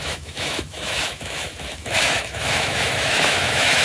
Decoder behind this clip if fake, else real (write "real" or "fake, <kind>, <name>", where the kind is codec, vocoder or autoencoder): fake, autoencoder, DAC-VAE